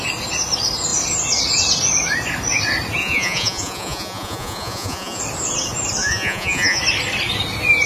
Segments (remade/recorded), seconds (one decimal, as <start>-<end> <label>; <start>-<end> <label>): 0.0-3.0 recorded; 3.0-5.2 remade; 5.2-6.0 recorded; 6.0-6.8 remade; 6.8-7.9 recorded